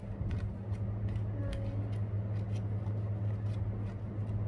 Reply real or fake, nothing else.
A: real